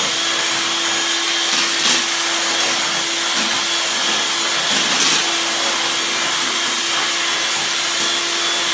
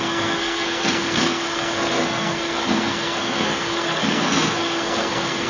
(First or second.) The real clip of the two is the first